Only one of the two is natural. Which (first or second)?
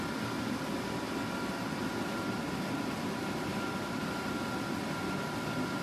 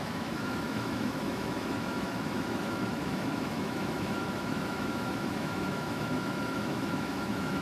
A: first